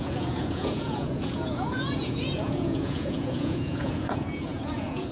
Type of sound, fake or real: fake